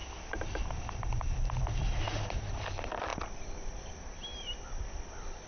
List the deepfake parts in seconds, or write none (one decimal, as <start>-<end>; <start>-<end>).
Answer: none

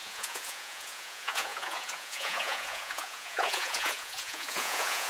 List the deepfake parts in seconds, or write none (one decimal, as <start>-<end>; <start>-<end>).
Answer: 0.0-5.1

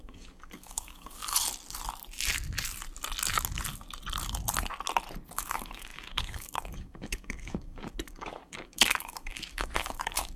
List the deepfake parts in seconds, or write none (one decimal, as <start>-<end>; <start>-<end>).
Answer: 0.0-1.2; 5.3-10.4